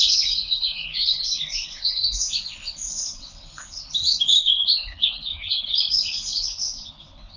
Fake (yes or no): yes